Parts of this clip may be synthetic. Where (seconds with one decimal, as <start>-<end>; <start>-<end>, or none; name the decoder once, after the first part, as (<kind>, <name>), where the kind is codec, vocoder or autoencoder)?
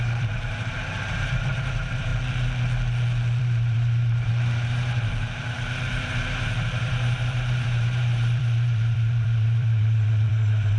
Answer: 0.0-2.1 (vocoder, BigVGAN v2); 3.4-10.8